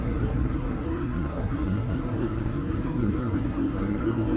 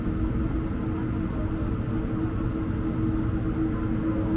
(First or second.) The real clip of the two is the second